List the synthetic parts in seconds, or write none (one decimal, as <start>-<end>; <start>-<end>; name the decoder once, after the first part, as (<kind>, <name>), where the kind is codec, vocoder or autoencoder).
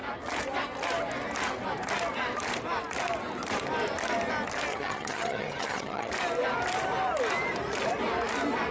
4.7-6.1 (vocoder, HiFi-GAN)